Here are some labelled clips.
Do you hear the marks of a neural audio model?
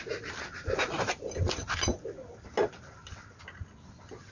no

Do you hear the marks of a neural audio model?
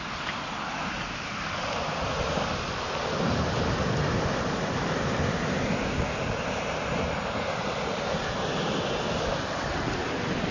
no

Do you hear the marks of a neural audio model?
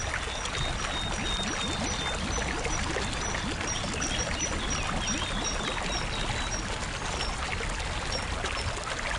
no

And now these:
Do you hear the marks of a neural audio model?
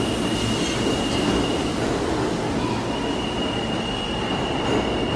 no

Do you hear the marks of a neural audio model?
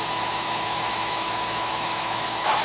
yes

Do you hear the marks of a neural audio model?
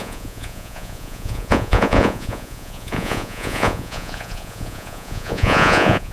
yes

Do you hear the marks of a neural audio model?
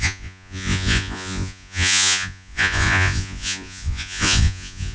yes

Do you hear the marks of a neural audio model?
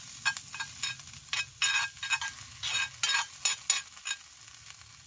no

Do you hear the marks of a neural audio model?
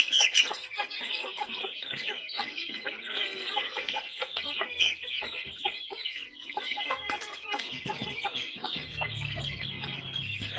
yes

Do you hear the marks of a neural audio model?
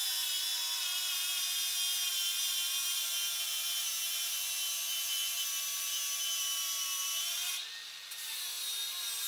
no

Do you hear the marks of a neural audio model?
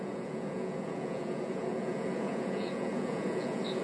yes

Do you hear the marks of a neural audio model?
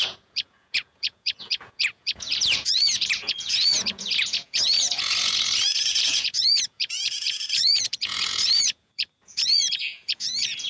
yes